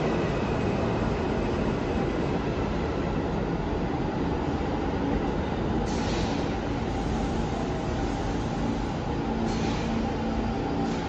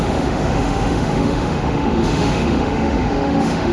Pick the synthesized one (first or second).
second